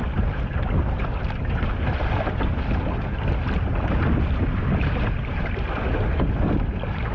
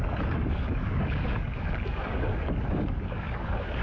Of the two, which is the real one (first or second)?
first